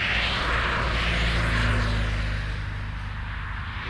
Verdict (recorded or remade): recorded